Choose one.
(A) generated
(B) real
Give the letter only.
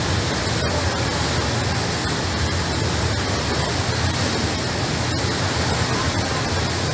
B